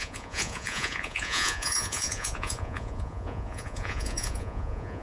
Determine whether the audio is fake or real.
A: fake